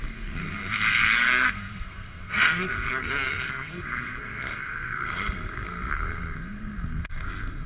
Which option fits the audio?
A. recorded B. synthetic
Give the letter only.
B